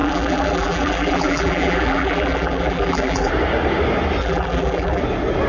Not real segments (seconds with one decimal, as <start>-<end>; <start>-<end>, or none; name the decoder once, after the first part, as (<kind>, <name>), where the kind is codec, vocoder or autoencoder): 0.0-3.3 (vocoder, BigVGAN v2); 4.2-5.0